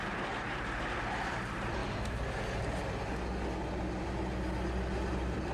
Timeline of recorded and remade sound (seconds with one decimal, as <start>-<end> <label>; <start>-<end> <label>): 0.0-1.8 remade; 1.8-5.1 recorded; 5.1-5.5 remade